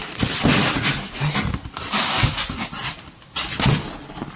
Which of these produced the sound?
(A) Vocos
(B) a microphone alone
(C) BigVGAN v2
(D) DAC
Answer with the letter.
B